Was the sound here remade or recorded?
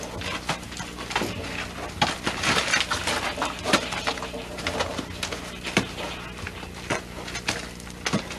recorded